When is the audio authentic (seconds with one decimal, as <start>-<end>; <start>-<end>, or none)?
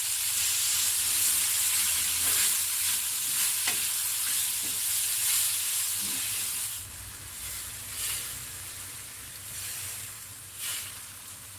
0.0-11.6